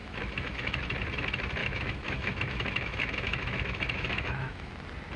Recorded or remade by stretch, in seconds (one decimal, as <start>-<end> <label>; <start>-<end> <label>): 0.0-0.8 remade; 0.8-1.6 recorded; 1.6-4.7 remade; 4.7-5.2 recorded